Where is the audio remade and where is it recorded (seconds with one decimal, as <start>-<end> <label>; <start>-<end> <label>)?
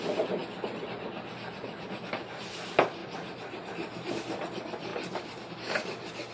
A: 0.0-6.3 recorded